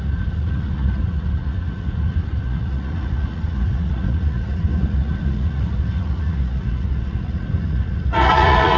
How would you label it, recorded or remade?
remade